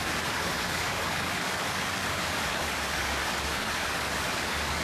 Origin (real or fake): fake